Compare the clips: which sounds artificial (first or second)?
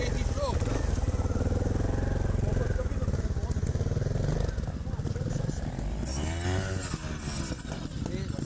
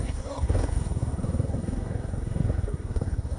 second